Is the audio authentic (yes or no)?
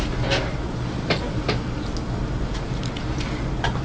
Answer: yes